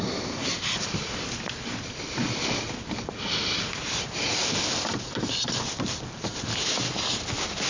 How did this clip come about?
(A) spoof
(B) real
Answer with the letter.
B